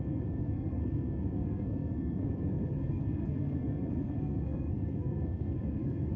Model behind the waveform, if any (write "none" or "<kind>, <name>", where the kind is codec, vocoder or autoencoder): codec, SNAC